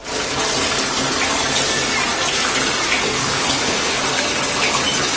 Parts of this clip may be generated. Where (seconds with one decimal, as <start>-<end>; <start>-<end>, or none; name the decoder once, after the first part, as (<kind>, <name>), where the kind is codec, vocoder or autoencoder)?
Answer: 3.2-4.0 (codec, HILCodec)